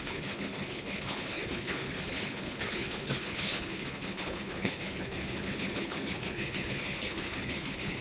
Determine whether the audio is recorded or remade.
remade